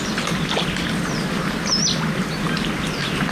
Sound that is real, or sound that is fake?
real